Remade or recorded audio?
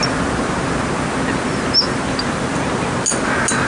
recorded